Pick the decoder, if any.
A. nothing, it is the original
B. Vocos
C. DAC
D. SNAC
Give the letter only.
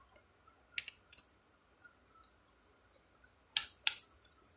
A